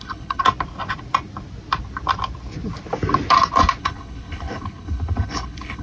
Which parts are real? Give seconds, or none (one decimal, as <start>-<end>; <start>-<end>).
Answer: 0.4-3.8